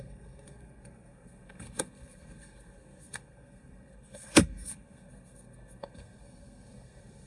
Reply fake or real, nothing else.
fake